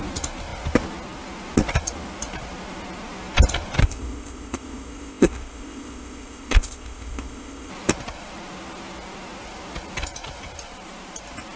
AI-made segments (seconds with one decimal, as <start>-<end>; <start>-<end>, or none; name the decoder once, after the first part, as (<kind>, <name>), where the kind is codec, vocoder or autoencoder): 3.8-7.7 (codec, ZipCodec)